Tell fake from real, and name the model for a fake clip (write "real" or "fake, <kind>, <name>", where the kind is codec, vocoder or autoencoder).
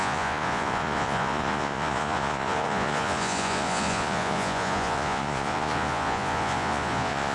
fake, vocoder, Vocos